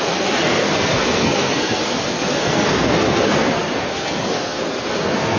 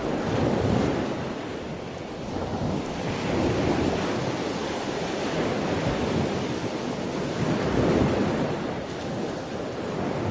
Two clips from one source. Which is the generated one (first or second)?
first